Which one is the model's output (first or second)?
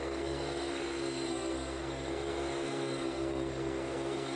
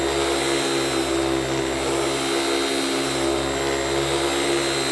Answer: first